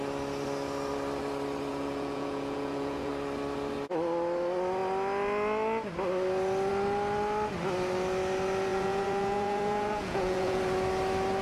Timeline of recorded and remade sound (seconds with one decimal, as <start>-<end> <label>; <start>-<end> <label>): 0.0-1.7 recorded; 1.7-3.1 remade; 3.1-8.7 recorded; 8.7-10.6 remade; 10.6-11.4 recorded